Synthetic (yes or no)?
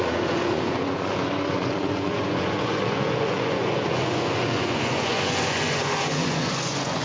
yes